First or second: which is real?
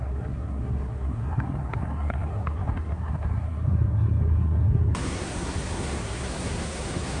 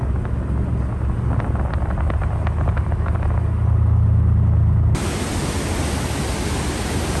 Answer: second